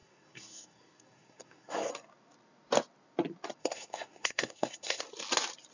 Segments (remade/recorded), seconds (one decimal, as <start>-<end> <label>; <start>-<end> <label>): 0.0-1.9 remade; 1.9-3.6 recorded; 3.6-5.0 remade; 5.0-5.7 recorded